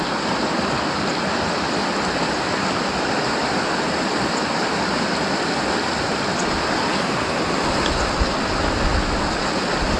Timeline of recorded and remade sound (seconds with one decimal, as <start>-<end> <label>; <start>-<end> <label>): 0.0-10.0 recorded